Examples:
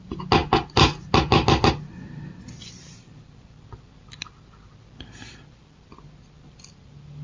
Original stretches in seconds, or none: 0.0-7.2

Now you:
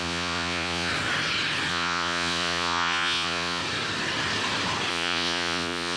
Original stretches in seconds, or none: 0.9-1.7; 3.6-4.9

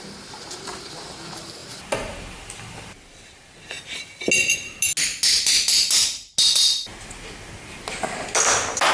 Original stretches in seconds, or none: 0.0-8.9